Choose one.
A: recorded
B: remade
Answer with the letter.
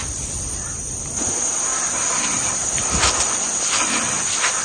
B